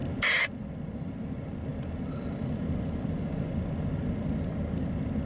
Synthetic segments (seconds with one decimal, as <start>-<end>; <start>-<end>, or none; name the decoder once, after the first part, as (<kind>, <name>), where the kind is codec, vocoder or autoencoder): none